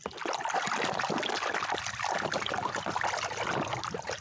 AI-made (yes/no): no